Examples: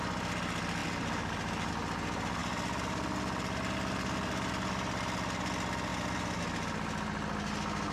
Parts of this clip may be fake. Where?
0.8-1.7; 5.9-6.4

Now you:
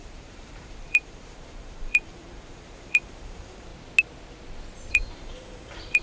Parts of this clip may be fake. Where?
0.0-3.7; 4.9-6.0

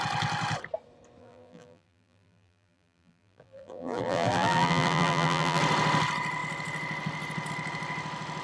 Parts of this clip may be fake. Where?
1.2-5.6

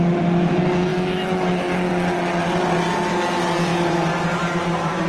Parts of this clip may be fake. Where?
3.7-5.1

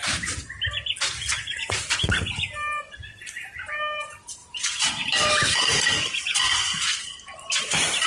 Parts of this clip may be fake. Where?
4.4-7.6